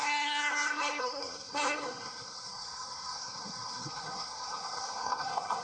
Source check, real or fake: fake